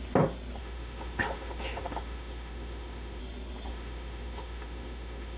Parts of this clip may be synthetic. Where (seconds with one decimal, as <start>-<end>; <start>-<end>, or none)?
0.6-3.2; 3.7-5.4